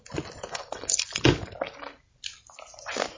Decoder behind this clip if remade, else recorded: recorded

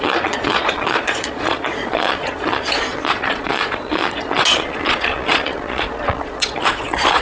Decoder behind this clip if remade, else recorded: remade, vocoder, Vocos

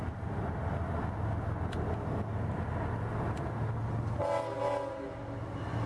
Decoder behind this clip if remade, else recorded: recorded